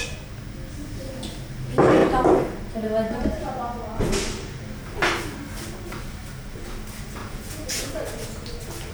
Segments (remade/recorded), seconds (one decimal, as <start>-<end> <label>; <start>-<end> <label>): 0.0-7.2 recorded; 7.2-7.9 remade; 7.9-8.9 recorded